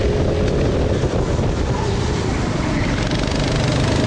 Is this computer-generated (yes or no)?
yes